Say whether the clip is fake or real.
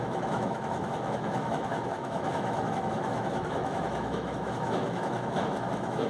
fake